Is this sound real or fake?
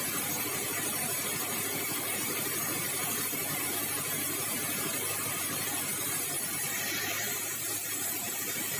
fake